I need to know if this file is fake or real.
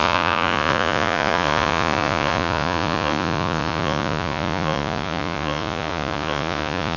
fake